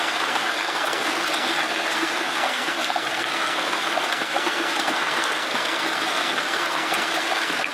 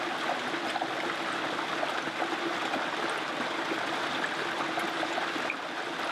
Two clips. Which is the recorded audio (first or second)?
second